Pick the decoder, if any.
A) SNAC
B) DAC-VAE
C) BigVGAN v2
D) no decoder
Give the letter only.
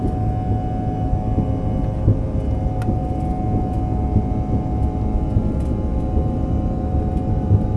D